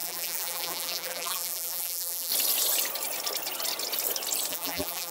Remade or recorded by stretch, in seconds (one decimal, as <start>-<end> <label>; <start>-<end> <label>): 0.0-2.3 remade; 2.3-4.5 recorded; 4.5-5.1 remade